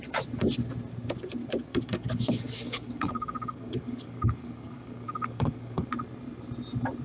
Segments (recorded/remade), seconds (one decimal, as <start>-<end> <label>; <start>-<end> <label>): 0.0-1.7 recorded; 1.7-5.9 remade; 5.9-7.0 recorded